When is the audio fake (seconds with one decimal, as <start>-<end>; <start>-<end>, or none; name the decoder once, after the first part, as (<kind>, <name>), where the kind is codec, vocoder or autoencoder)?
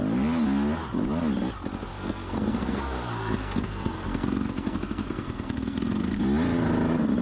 1.9-6.2 (codec, SNAC)